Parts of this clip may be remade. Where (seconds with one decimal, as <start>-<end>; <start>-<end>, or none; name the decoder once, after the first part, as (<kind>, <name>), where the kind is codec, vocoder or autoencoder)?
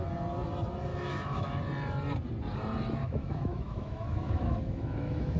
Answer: 0.9-1.6 (autoencoder, DAC-VAE); 3.0-5.4